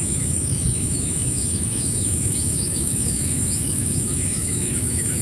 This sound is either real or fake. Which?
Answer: fake